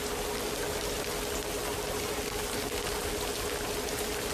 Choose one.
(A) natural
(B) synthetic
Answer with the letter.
A